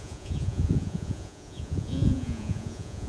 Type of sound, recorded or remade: remade